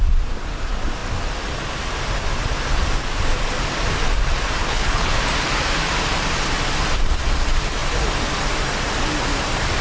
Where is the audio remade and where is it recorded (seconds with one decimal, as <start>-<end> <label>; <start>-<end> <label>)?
0.0-4.6 recorded; 4.6-5.2 remade; 5.2-9.8 recorded